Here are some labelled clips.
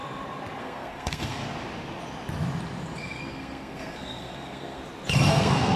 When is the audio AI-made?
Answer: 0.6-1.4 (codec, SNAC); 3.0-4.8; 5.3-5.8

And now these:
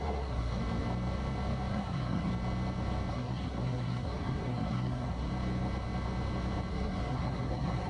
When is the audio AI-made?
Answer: 0.0-0.6 (codec, SNAC); 1.7-2.3; 3.1-5.3; 6.7-7.9

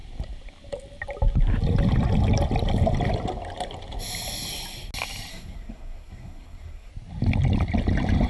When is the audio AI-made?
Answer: 5.3-6.9 (codec, SNAC)

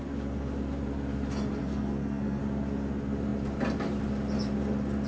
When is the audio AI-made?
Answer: 1.6-2.4 (codec, SNAC)

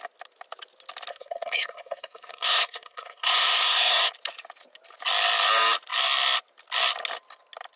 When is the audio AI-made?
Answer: 1.1-4.1 (codec, SNAC)

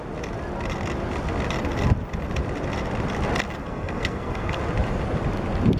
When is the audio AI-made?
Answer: 3.6-4.6 (codec, SNAC)

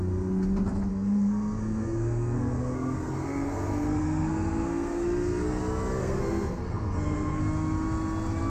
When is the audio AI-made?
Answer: 0.9-5.6 (codec, SNAC); 6.0-7.4

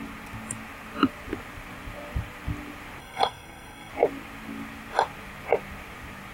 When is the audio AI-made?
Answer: 3.0-3.9 (codec, SNAC)